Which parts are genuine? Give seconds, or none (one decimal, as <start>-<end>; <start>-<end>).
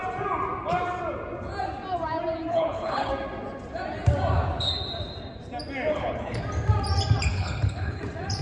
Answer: 0.0-2.5; 3.1-5.9; 6.4-7.3; 8.0-8.4